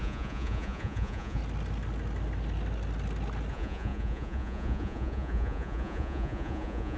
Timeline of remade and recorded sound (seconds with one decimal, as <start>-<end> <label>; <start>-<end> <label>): 0.0-1.4 remade; 1.4-3.5 recorded; 3.5-7.0 remade